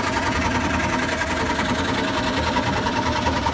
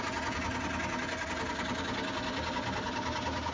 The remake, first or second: first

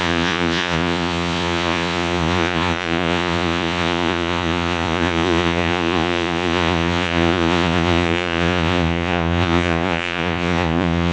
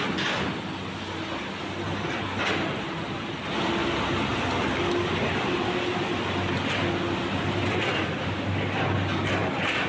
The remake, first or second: first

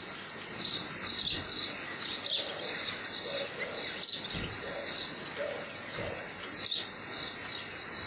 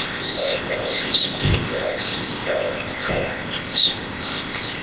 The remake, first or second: second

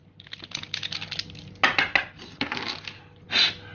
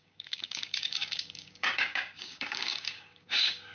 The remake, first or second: second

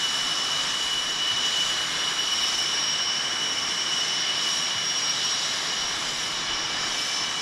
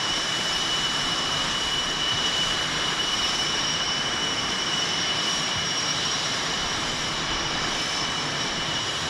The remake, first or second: second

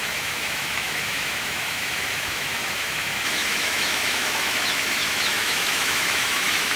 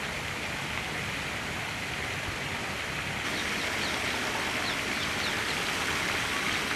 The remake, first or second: first